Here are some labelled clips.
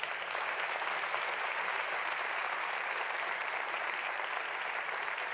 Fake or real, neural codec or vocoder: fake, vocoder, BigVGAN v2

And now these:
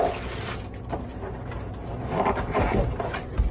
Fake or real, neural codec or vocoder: real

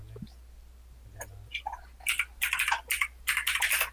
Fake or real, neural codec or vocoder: real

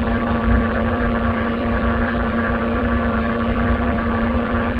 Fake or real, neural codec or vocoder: fake, vocoder, BigVGAN v2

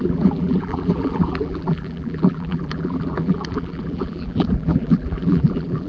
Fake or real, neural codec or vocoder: fake, vocoder, BigVGAN v2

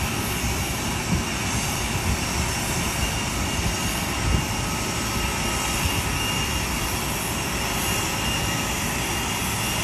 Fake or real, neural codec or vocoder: real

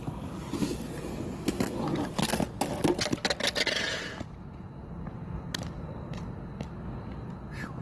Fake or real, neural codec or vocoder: real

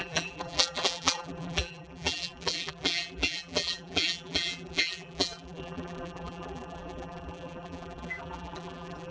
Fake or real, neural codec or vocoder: fake, vocoder, BigVGAN v2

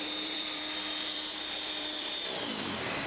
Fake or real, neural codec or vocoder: fake, vocoder, BigVGAN v2